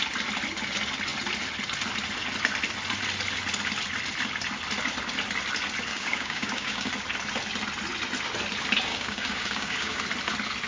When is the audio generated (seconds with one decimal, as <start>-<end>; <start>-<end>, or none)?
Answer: 5.9-6.9; 8.9-10.0